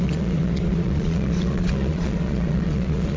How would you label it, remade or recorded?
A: remade